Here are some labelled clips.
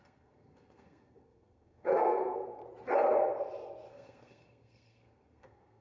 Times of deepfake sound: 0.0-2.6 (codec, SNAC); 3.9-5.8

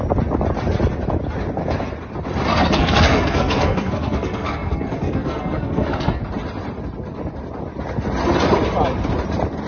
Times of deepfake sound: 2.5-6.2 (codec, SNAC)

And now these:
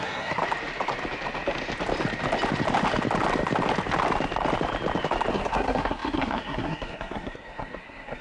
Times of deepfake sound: 0.0-0.4 (codec, SNAC); 5.3-8.2

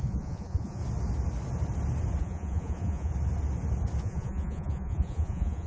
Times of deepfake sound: 0.0-0.8 (vocoder, Vocos); 2.2-3.1; 4.0-5.7

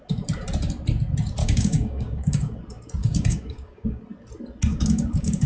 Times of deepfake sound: 1.4-2.6 (codec, DAC); 3.0-4.0; 4.7-5.5

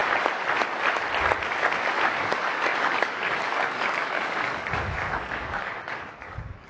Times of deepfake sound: 1.9-6.7 (codec, DAC)

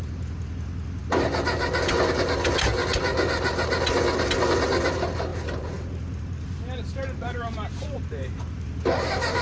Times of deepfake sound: 5.3-9.4 (vocoder, BigVGAN v2)